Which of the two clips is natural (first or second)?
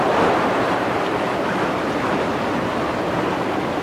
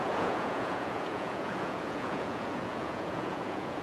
first